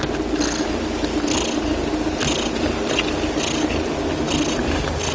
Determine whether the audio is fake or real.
real